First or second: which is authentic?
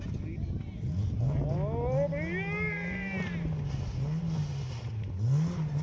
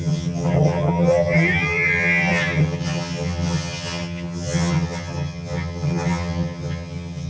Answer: first